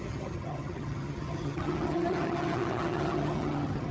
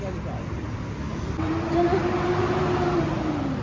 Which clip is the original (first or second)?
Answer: second